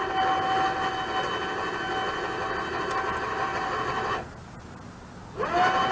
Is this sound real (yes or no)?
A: yes